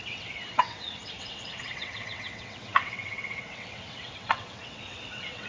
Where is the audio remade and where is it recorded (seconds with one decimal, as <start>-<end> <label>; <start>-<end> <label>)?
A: 0.0-5.5 remade